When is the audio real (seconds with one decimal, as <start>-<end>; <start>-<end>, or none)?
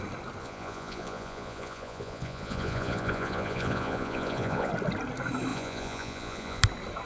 0.0-0.4; 4.7-5.5; 6.6-7.1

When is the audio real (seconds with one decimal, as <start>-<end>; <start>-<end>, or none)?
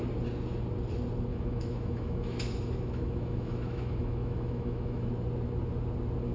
0.0-1.3; 5.1-6.3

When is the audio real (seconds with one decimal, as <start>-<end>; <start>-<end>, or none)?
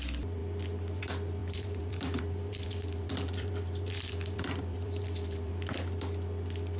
0.0-1.4; 5.5-6.8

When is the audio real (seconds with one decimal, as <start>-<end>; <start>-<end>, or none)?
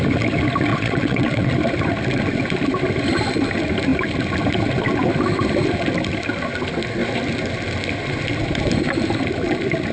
0.0-0.7; 1.5-9.9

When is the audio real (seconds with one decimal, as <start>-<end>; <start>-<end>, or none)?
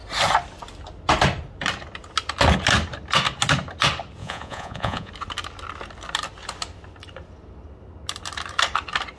0.0-4.2; 5.1-9.2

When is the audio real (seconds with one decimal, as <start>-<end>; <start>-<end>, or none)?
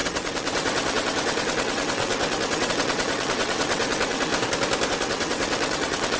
4.3-4.9